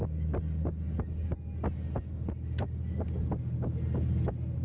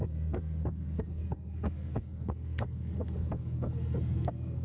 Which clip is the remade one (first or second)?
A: second